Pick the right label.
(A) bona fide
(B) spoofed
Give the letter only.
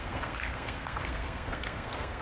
B